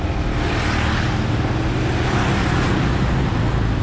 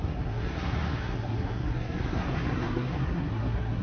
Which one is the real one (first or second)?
first